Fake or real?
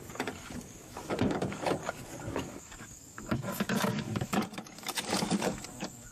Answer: fake